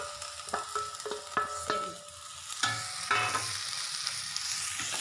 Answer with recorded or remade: recorded